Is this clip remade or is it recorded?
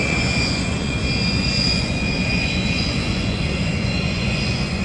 remade